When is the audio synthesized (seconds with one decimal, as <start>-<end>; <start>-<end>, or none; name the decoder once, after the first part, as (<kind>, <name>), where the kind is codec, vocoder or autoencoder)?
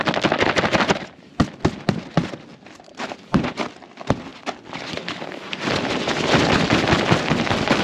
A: 0.7-1.4 (vocoder, BigVGAN v2); 2.5-3.6